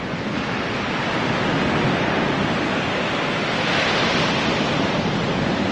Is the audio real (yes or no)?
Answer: yes